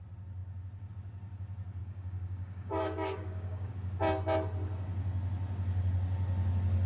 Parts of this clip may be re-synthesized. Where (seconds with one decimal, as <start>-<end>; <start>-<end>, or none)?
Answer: 1.8-3.7